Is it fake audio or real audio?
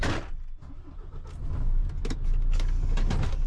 real